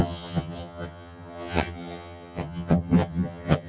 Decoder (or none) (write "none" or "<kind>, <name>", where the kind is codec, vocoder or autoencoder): vocoder, HiFi-GAN